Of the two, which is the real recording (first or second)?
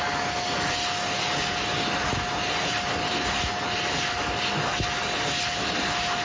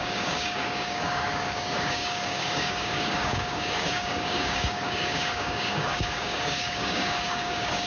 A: first